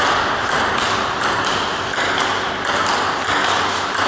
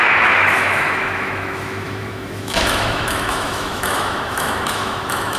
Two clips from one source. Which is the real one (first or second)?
first